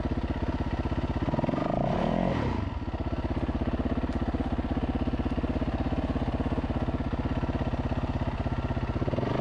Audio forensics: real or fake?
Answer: real